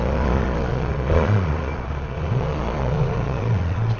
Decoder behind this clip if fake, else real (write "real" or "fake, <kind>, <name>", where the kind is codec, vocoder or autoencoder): fake, vocoder, Vocos